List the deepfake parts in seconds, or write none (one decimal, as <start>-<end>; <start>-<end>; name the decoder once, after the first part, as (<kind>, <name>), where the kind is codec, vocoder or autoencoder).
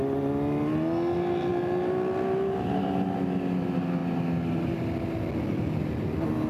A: none